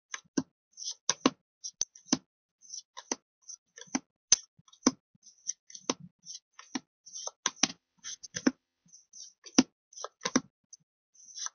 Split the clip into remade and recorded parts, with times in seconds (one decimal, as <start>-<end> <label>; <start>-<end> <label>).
0.0-7.7 recorded; 7.7-8.9 remade; 8.9-11.5 recorded